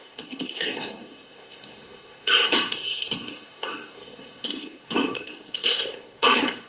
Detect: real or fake fake